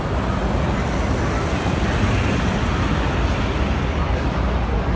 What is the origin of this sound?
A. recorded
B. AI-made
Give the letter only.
A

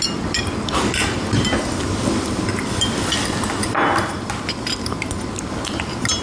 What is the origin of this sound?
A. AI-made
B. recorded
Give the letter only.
B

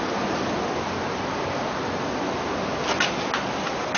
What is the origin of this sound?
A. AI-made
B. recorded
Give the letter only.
B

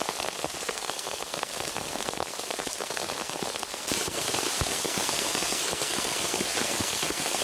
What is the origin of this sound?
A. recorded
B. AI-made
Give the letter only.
B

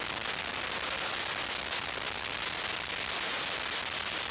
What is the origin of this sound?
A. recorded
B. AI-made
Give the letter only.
A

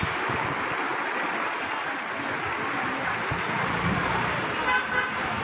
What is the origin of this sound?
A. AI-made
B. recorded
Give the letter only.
B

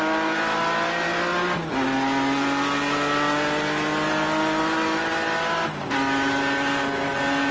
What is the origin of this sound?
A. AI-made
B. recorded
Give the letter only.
B